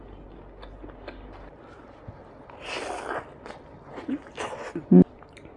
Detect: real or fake real